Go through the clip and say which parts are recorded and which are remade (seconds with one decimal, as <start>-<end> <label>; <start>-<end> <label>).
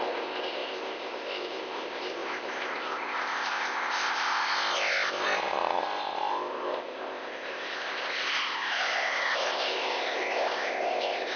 0.0-11.4 remade